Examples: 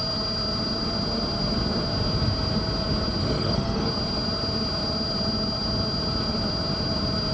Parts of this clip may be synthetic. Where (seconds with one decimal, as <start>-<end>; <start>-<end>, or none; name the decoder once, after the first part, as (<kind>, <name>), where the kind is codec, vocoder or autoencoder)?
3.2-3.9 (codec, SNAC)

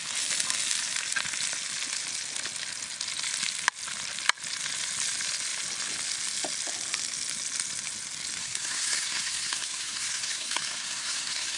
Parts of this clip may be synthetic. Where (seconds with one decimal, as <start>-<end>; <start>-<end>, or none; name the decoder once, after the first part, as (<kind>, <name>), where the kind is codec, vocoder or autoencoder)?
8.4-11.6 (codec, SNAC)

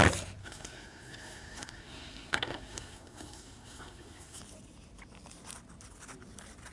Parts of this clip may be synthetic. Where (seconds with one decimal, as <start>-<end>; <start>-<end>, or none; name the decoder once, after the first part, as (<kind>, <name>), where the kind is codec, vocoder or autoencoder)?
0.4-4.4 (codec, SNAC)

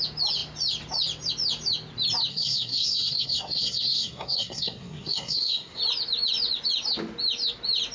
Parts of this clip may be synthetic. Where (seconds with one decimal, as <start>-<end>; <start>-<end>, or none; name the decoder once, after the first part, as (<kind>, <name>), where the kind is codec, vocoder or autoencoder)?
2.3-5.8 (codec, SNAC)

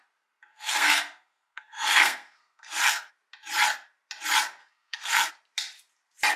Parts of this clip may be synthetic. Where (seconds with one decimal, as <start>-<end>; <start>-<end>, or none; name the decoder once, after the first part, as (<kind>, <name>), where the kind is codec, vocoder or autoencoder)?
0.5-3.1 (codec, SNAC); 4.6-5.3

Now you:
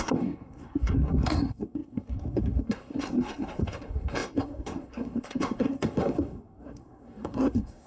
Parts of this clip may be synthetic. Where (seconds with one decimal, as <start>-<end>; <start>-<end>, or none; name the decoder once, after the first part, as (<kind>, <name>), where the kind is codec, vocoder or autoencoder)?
0.0-7.9 (codec, SNAC)

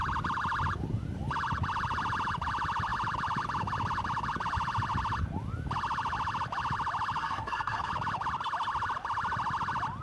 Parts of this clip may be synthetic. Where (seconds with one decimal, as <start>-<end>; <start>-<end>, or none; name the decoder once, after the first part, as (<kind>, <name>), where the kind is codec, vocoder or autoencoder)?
7.2-7.9 (codec, SNAC)